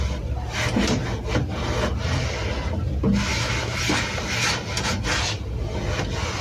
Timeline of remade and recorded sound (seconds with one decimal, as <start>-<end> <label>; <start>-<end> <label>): 0.0-3.3 recorded; 3.3-3.8 remade; 3.8-6.4 recorded